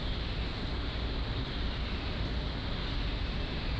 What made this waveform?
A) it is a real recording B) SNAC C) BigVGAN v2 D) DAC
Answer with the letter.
A